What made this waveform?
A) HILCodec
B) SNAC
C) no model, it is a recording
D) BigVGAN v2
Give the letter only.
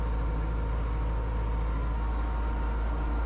C